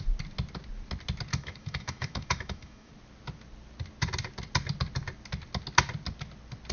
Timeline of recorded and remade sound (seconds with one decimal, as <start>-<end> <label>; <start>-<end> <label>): 0.0-1.3 recorded; 1.3-2.9 remade; 2.9-6.7 recorded